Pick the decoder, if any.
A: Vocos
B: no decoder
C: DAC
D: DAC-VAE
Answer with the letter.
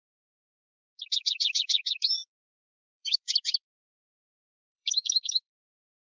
C